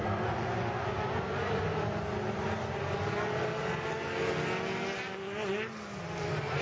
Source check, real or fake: real